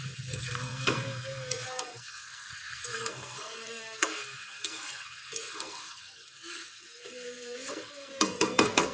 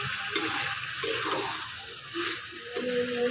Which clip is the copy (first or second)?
first